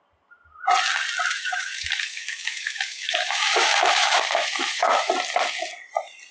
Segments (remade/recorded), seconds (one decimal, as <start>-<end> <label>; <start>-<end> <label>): 0.0-1.3 recorded; 1.3-5.1 remade; 5.1-6.3 recorded